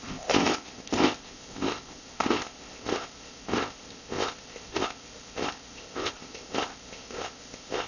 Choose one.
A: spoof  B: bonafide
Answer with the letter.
A